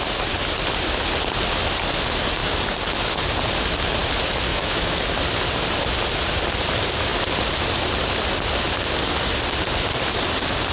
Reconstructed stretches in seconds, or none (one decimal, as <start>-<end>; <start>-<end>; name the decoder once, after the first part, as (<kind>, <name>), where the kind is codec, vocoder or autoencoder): 4.5-5.0 (autoencoder, DAC-VAE)